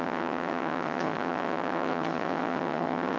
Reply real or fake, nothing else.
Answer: fake